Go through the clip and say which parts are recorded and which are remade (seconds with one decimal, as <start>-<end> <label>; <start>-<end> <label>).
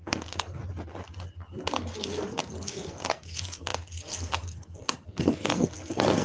0.0-0.6 remade; 0.6-2.0 recorded; 2.0-6.2 remade